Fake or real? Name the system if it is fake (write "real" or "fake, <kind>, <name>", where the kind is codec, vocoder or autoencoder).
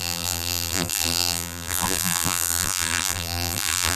fake, vocoder, BigVGAN v2